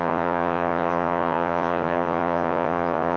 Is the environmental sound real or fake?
fake